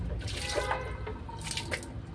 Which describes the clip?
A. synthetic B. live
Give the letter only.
B